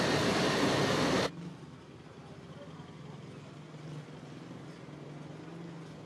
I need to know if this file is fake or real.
real